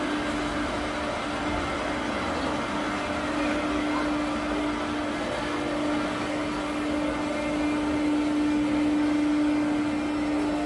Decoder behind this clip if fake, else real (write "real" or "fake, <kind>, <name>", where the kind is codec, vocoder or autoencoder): real